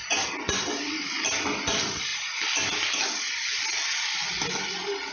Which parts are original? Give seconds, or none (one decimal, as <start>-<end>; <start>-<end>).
0.0-5.1